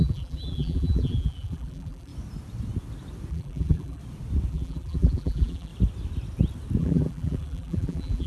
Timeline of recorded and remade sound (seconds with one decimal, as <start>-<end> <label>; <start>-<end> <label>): 0.0-2.1 remade; 2.1-3.3 recorded; 3.3-4.0 remade; 4.0-4.5 recorded; 4.5-5.7 remade; 5.7-6.8 recorded; 6.8-8.3 remade